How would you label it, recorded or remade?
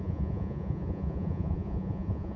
remade